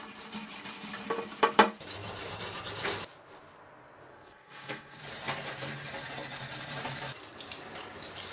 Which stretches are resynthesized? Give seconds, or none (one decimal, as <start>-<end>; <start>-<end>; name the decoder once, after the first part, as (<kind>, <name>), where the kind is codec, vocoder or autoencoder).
4.1-5.0 (codec, SNAC)